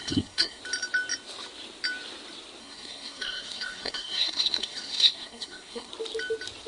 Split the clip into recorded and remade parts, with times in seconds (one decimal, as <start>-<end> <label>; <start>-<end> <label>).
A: 0.0-0.6 remade; 0.6-2.6 recorded; 2.6-5.9 remade; 5.9-6.7 recorded